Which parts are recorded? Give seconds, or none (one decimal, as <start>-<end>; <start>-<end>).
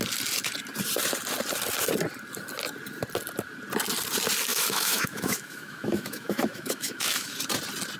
0.0-4.5; 7.4-8.0